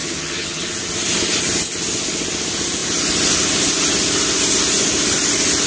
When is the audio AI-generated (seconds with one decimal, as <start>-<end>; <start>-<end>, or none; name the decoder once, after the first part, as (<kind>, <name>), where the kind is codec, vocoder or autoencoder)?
0.0-0.6 (vocoder, HiFi-GAN)